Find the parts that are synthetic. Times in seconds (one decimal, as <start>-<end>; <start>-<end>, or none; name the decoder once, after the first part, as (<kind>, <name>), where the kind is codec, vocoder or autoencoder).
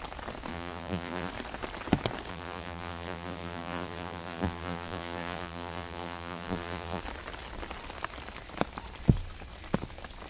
0.5-1.3 (vocoder, BigVGAN v2); 2.3-7.0